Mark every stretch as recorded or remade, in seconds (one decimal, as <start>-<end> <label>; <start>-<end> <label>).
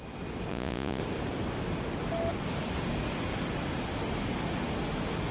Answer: 0.0-0.5 recorded; 0.5-1.0 remade; 1.0-5.3 recorded